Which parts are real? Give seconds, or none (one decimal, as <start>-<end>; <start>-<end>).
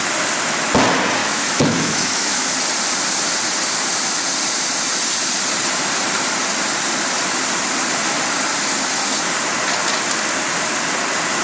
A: 0.0-1.2; 2.5-11.4